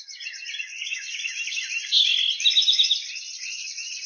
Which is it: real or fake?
real